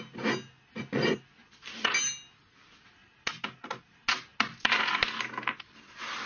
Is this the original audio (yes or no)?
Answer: yes